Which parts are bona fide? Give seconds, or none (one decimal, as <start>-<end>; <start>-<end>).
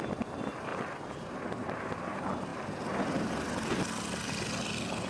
0.0-5.1